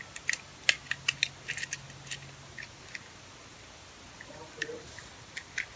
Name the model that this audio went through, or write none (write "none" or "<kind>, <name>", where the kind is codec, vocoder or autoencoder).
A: none